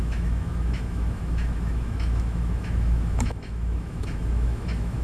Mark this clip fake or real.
fake